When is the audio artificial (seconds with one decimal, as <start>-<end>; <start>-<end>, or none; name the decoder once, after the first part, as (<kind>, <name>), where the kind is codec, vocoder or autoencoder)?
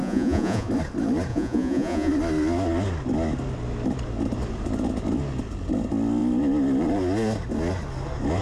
0.0-0.7 (vocoder, Vocos); 1.3-2.1